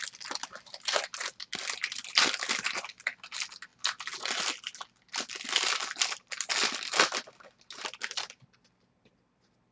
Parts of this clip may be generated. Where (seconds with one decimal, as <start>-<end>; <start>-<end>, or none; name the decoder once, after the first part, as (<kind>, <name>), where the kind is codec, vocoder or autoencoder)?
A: none